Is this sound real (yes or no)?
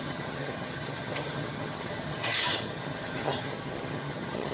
no